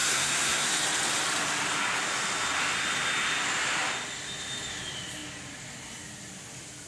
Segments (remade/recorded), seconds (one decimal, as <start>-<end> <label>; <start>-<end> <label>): 0.0-0.7 remade; 0.7-6.9 recorded